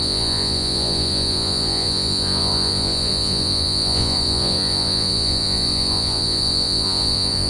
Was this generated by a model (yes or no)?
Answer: yes